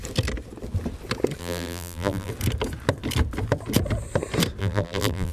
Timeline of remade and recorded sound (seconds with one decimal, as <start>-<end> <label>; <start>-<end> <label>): 0.0-1.4 recorded; 1.4-2.3 remade; 2.3-4.6 recorded; 4.6-5.3 remade